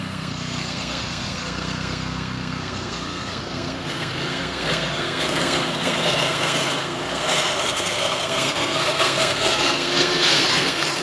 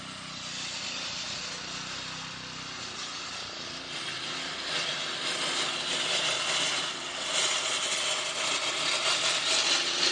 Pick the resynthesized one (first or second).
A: first